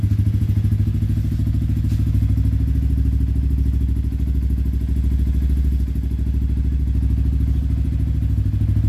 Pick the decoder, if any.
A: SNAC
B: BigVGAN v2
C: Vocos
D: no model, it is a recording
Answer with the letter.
D